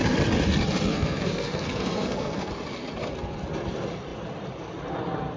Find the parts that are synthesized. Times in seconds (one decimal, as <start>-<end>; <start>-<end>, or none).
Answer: 0.9-2.5